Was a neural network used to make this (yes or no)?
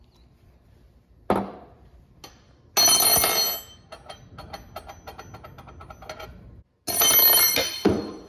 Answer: no